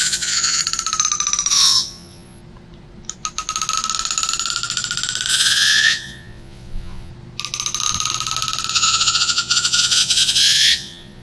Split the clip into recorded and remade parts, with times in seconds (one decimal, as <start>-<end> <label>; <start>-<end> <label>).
0.0-0.6 remade; 0.6-1.5 recorded; 1.5-2.4 remade; 2.4-5.3 recorded; 5.3-7.1 remade; 7.1-8.7 recorded; 8.7-11.2 remade